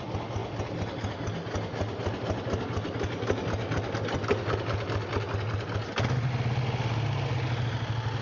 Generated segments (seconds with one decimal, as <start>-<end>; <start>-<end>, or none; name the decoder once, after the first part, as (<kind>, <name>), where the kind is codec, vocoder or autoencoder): none